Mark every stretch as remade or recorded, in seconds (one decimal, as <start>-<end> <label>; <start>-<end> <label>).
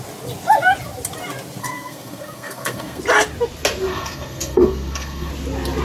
0.0-1.6 recorded; 1.6-3.0 remade; 3.0-3.9 recorded; 3.9-5.3 remade; 5.3-5.8 recorded